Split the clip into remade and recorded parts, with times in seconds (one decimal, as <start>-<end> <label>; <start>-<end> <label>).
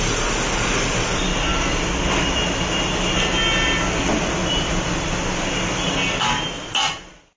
0.0-7.4 recorded